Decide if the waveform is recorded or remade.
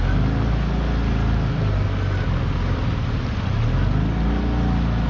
recorded